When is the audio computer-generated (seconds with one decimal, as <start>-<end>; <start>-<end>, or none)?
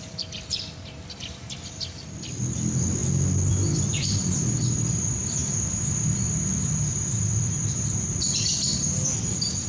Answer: 0.0-3.0; 3.5-9.7